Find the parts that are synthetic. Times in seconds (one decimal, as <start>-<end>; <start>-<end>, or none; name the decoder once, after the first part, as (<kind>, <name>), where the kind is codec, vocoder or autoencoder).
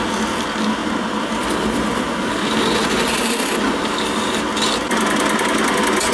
0.0-2.8 (vocoder, BigVGAN v2)